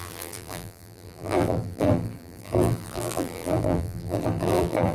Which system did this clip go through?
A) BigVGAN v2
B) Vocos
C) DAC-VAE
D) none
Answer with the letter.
A